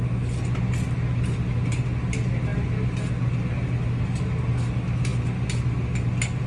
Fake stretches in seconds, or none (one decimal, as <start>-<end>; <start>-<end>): none